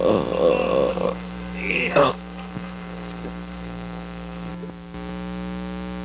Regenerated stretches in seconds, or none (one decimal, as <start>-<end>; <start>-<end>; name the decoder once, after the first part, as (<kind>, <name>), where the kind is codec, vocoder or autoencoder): 0.9-4.5 (codec, SNAC)